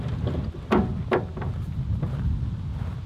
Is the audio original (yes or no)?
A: yes